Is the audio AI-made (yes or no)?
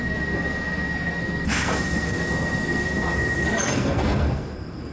yes